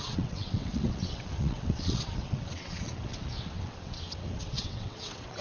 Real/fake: fake